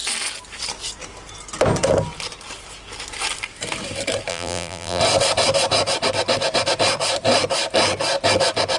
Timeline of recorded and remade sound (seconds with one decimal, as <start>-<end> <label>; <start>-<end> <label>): 0.0-4.3 recorded; 4.3-5.0 remade; 5.0-8.8 recorded